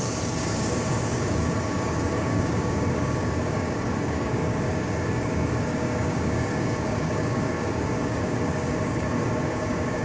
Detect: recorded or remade remade